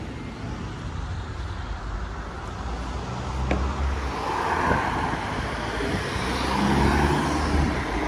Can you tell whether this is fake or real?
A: real